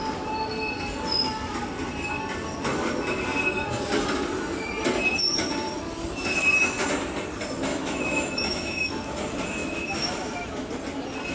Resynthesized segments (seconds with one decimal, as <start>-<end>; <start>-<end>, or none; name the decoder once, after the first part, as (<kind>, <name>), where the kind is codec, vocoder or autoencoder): 7.7-8.9 (autoencoder, DAC-VAE); 9.6-10.7